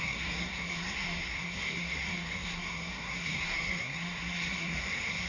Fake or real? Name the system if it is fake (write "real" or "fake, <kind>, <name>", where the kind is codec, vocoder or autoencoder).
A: fake, codec, SNAC